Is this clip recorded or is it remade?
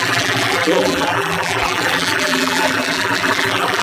remade